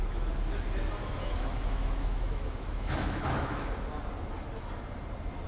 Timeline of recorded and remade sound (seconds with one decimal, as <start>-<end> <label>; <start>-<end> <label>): 0.0-1.2 recorded; 1.2-3.7 remade; 3.7-5.5 recorded